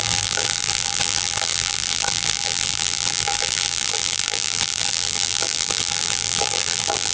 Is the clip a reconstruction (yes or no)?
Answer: yes